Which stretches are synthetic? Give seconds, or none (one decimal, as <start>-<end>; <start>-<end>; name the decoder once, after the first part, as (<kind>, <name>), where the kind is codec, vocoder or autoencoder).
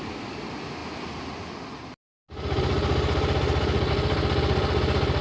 none